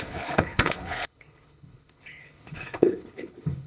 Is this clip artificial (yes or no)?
yes